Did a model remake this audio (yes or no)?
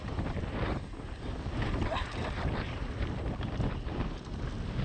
no